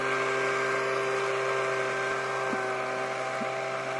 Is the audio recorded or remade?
recorded